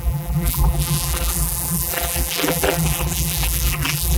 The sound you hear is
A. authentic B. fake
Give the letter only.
B